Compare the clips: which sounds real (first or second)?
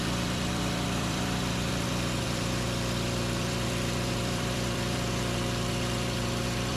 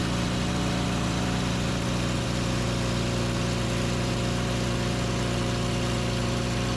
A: second